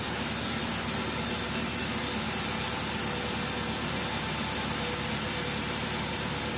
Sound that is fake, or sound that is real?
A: real